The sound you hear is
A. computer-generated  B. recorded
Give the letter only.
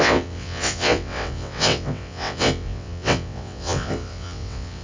A